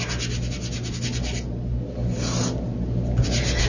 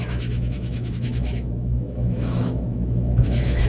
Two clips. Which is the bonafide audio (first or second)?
first